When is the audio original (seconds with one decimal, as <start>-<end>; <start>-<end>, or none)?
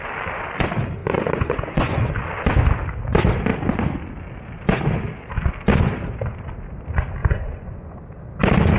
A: 0.0-1.0; 2.1-7.2; 8.0-8.8